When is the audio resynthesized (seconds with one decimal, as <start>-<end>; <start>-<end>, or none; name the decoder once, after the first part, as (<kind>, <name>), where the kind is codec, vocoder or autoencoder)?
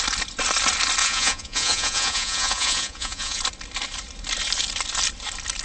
1.0-3.4 (vocoder, Vocos)